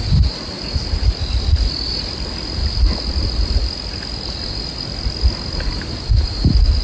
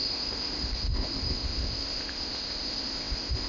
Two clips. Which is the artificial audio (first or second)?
second